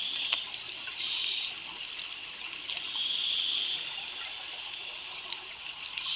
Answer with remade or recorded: recorded